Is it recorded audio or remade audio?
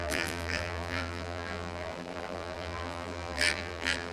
remade